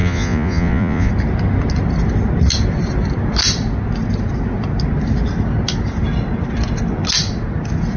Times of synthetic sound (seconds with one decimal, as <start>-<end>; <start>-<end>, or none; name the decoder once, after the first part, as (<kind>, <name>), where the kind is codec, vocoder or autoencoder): 0.0-1.1 (vocoder, Vocos)